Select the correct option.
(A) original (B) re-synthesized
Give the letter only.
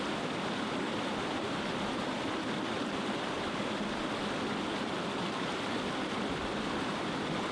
A